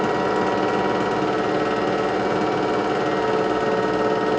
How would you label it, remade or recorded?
recorded